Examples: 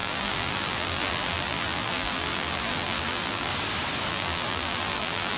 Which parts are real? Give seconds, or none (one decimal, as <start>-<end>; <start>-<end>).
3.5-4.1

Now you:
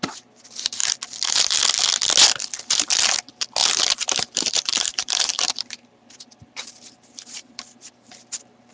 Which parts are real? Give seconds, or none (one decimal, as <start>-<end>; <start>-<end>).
0.0-3.6; 8.2-8.7

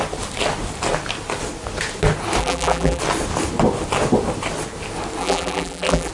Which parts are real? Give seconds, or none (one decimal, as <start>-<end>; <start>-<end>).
0.0-2.4; 3.0-5.2

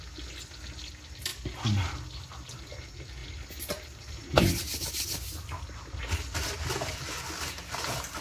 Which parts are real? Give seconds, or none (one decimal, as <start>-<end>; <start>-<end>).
0.0-8.2

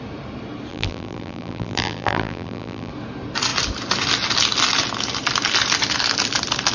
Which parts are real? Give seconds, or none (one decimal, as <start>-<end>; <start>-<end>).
0.0-0.7; 2.9-6.7